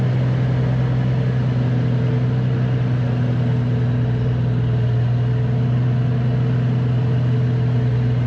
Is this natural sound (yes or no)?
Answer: yes